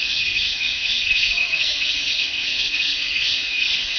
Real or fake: fake